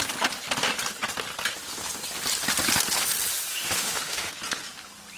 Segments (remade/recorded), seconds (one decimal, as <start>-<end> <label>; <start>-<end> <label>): 0.0-3.5 recorded; 3.5-4.3 remade; 4.3-5.2 recorded